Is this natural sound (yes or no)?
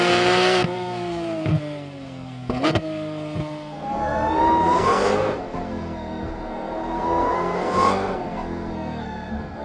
no